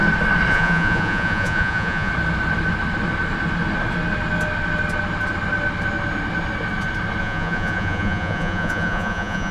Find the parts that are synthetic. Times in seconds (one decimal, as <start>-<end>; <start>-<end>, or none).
0.5-2.1; 7.2-9.5